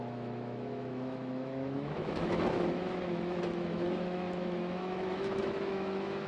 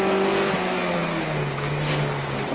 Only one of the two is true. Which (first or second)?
second